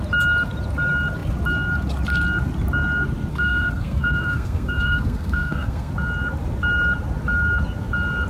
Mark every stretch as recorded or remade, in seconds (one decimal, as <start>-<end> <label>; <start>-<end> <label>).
0.0-3.3 recorded; 3.3-5.9 remade; 5.9-8.3 recorded